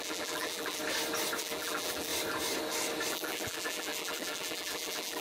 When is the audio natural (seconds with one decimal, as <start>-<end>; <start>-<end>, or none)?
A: 0.8-1.4; 2.1-3.1